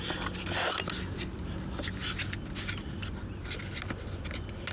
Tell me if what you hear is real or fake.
real